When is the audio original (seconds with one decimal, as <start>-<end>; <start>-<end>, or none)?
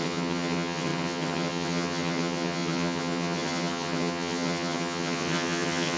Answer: none